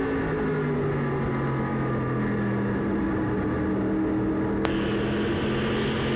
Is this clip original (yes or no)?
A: yes